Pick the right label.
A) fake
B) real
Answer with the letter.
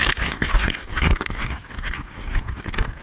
A